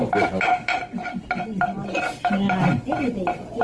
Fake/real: real